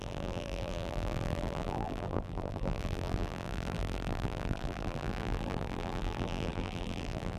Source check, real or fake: fake